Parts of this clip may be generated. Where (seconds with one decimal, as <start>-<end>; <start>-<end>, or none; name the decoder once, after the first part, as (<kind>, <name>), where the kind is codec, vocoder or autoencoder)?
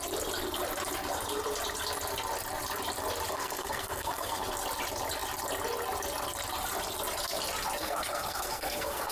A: 3.3-4.4 (codec, SNAC); 7.8-9.1